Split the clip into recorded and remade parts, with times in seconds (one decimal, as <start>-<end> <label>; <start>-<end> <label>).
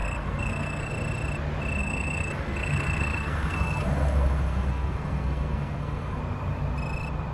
0.0-0.9 remade; 0.9-1.8 recorded; 1.8-6.2 remade; 6.2-7.3 recorded